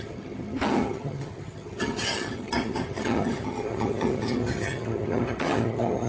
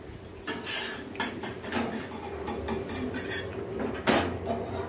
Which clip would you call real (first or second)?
second